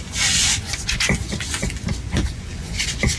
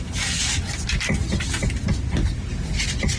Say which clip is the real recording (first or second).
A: second